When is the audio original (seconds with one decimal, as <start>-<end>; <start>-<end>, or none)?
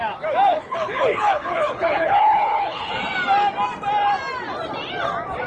0.0-0.5; 2.9-5.5